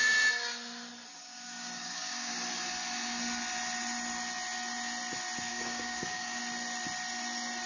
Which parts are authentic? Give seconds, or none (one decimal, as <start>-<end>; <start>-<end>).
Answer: 0.0-1.1; 2.3-5.5; 6.4-7.7